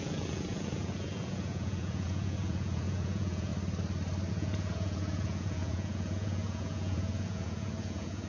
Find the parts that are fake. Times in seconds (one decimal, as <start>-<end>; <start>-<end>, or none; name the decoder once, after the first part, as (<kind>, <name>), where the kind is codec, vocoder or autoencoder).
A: 0.0-3.5 (vocoder, Vocos); 4.3-8.3